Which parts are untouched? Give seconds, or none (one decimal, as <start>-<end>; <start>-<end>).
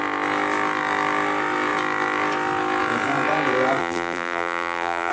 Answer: 0.0-3.8